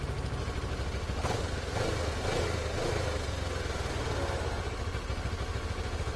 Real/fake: real